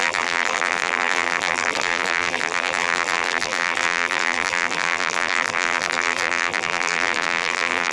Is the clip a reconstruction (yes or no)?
yes